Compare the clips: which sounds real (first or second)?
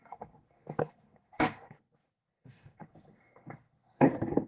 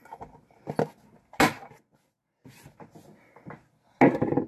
second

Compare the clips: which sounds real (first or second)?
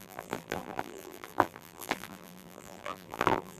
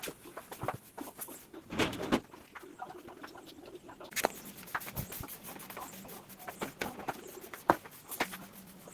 second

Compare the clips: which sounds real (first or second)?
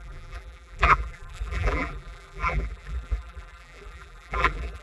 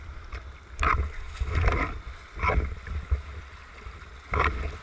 second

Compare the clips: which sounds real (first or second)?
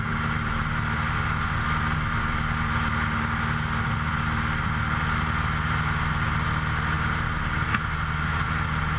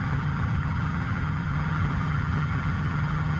first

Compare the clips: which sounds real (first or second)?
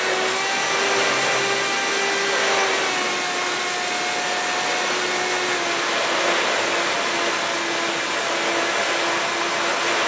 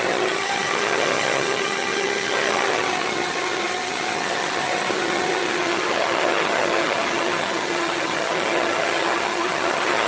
first